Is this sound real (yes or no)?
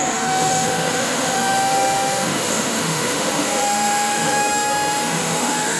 no